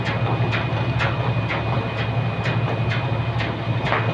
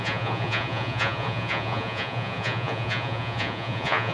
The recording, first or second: first